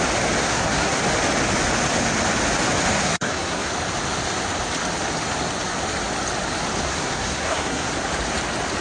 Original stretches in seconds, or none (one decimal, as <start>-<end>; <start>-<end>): 0.0-0.4; 1.0-3.0; 3.7-6.9; 7.9-8.8